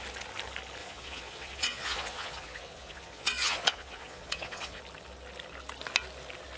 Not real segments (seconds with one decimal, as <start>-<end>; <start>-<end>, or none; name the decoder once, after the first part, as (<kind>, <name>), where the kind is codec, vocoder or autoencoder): 0.8-4.8 (vocoder, Vocos)